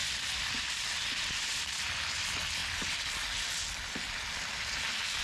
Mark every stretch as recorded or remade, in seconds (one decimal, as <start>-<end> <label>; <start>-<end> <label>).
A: 0.0-5.2 recorded